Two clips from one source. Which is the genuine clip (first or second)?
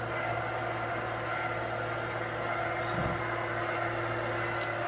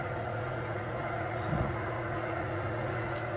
first